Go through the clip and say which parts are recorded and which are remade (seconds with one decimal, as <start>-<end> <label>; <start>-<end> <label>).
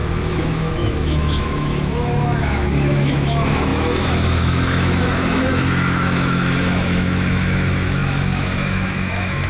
0.0-9.5 remade